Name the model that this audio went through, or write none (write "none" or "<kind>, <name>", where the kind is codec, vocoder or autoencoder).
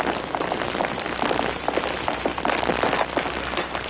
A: none